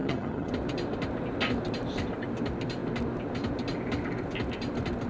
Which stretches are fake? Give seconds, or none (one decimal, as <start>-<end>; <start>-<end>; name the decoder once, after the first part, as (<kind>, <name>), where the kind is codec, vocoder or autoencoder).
0.0-0.5 (vocoder, HiFi-GAN)